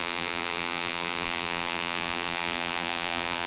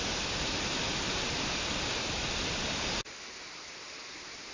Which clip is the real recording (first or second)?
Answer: second